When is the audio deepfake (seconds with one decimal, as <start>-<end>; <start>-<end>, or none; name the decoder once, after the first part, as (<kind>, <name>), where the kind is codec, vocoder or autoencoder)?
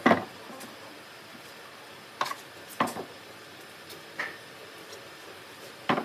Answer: none